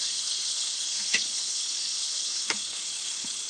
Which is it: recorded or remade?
remade